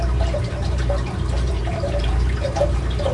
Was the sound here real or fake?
fake